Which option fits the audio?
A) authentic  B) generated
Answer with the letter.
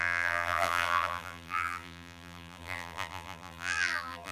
B